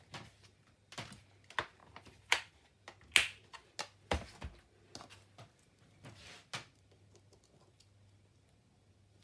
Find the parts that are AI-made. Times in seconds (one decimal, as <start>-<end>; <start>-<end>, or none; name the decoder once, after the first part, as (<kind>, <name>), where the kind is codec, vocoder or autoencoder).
1.8-2.5 (vocoder, BigVGAN v2)